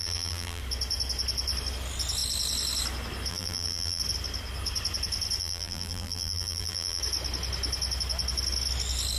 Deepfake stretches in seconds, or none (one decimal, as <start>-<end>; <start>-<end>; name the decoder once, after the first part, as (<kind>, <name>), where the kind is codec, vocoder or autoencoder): 0.0-0.6 (vocoder, BigVGAN v2); 3.3-4.0; 5.4-7.0